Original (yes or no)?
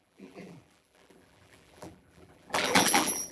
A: no